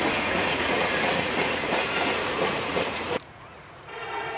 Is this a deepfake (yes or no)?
yes